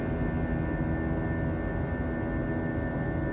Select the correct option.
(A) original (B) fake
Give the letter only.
A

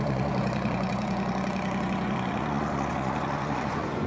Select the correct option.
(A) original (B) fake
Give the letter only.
B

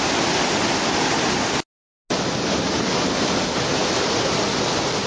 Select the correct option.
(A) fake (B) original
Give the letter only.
B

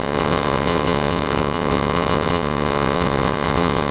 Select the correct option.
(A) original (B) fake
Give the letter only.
B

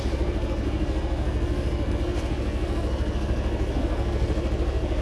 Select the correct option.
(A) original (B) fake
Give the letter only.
B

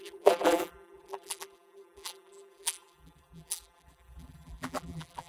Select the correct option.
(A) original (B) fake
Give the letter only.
B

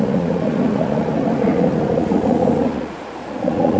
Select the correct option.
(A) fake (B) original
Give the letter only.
A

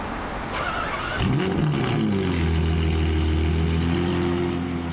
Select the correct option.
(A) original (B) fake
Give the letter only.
A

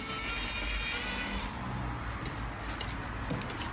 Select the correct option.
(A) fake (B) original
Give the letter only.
B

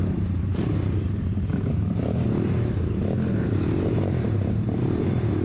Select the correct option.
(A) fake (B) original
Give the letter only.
A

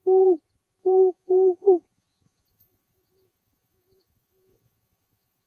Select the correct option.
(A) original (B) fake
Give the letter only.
B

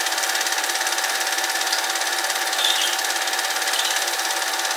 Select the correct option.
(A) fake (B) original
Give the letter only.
B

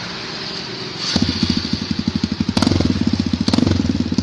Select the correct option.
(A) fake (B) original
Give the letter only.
B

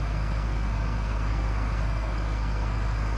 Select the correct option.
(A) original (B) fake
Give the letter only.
B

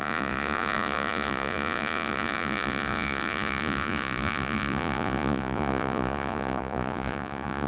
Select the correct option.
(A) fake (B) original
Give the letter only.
A